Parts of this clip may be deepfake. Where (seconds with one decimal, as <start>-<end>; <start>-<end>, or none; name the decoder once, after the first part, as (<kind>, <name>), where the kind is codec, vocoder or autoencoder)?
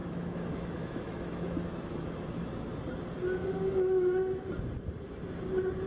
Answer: 0.0-2.5 (autoencoder, DAC-VAE); 3.4-4.5